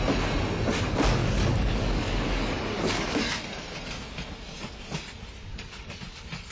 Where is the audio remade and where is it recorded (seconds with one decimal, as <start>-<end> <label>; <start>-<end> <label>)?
0.0-1.2 recorded; 1.2-3.4 remade; 3.4-5.5 recorded; 5.5-6.0 remade; 6.0-6.5 recorded